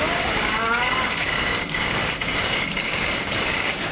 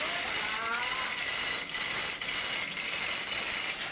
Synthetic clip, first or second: first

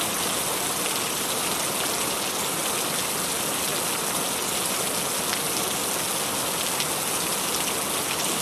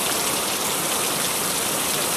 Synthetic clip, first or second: second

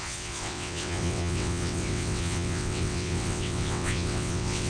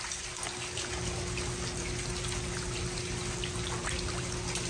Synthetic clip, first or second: first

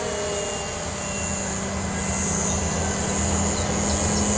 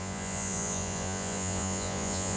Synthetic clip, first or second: second